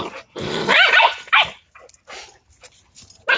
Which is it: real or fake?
real